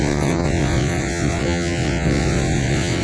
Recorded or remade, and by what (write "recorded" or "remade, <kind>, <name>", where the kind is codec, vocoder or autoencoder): remade, vocoder, WaveNeXt